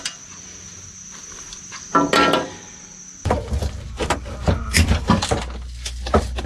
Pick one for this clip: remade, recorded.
recorded